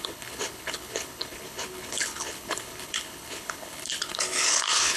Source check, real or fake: fake